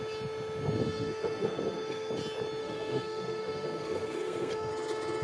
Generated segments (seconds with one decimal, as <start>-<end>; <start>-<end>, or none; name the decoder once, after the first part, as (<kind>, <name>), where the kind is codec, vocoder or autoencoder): 0.8-2.1 (codec, SNAC); 2.6-4.7